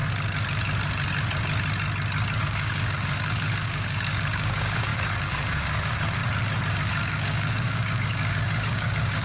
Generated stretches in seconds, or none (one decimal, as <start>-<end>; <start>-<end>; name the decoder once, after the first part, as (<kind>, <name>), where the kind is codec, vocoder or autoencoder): 2.4-6.2 (codec, DAC); 6.7-9.2